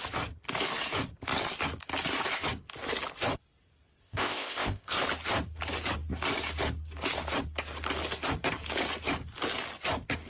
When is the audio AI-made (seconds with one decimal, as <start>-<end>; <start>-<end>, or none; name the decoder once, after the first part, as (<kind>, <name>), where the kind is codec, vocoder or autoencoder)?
4.0-5.0 (codec, ZipCodec)